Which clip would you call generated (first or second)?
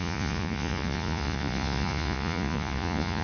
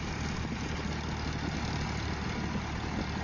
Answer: first